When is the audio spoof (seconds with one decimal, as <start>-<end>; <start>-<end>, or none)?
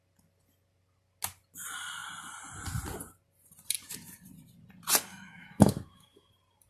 5.1-6.3